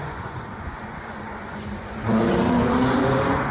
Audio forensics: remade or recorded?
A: remade